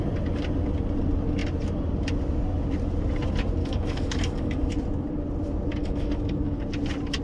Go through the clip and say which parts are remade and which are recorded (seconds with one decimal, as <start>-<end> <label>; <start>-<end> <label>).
0.0-3.6 recorded; 3.6-4.7 remade; 4.7-5.8 recorded; 5.8-6.6 remade; 6.6-7.2 recorded